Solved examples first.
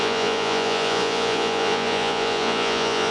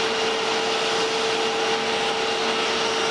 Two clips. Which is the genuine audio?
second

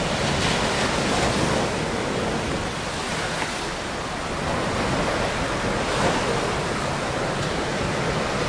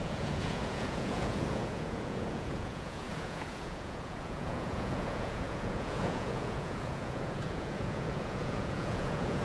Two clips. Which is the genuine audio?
first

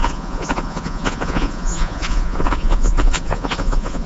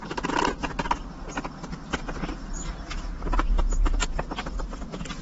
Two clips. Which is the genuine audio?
second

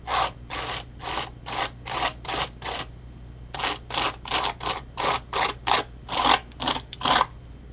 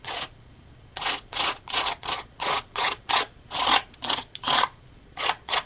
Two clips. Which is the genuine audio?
first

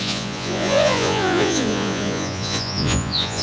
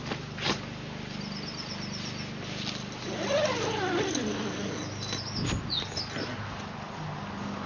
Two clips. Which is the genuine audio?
second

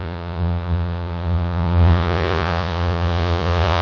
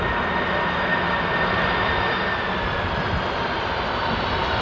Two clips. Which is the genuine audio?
second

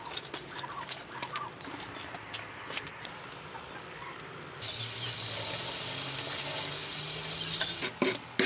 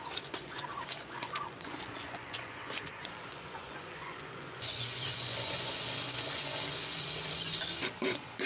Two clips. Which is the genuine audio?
first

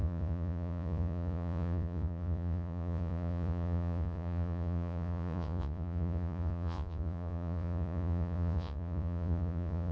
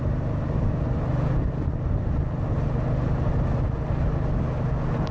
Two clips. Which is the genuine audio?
second